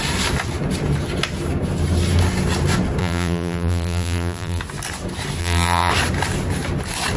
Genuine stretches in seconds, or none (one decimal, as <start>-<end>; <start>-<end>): 0.0-3.0; 4.6-5.4; 5.9-7.2